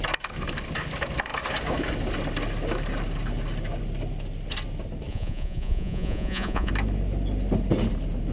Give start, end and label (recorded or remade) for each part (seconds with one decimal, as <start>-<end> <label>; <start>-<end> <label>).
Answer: 0.0-5.1 recorded; 5.1-6.7 remade; 6.7-8.3 recorded